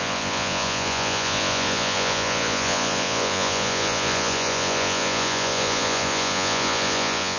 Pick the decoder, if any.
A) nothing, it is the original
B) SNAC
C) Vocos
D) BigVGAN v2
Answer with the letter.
C